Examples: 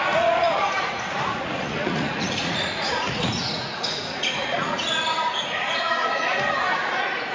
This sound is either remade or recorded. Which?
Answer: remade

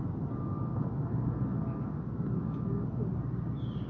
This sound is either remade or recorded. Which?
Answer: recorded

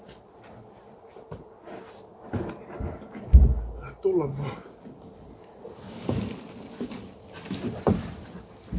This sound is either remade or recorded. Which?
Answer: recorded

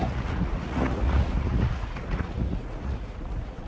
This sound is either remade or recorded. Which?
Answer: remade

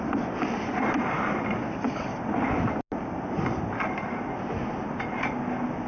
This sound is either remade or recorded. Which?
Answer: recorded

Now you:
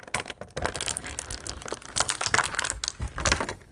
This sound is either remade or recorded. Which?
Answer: recorded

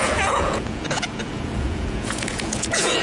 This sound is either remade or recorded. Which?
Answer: remade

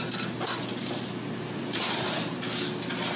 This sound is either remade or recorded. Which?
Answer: recorded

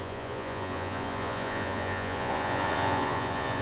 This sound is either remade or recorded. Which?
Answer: remade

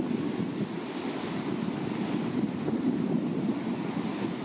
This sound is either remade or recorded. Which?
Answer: recorded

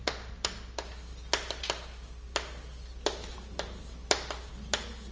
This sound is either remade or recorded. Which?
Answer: recorded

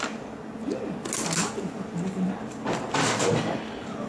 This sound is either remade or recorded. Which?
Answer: recorded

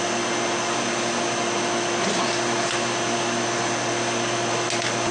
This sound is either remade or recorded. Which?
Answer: recorded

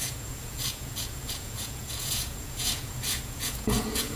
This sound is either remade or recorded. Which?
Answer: remade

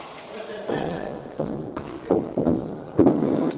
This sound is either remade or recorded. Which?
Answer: remade